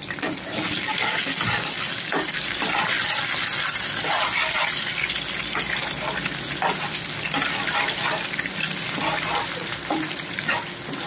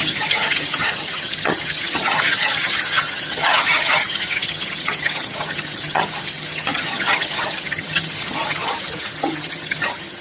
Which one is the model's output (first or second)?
second